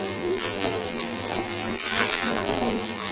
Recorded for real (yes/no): no